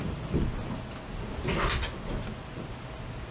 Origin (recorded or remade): recorded